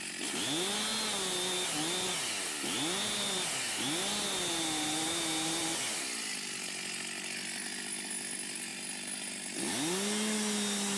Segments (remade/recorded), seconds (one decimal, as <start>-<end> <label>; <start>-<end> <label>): 0.0-11.0 recorded